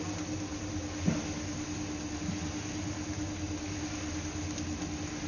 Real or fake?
real